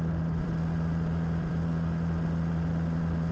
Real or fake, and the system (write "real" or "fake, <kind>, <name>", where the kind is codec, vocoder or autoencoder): fake, vocoder, BigVGAN v2